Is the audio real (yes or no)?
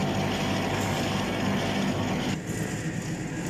yes